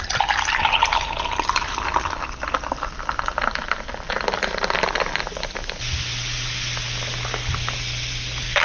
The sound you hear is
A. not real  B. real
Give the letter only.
B